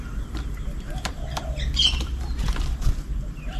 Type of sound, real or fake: real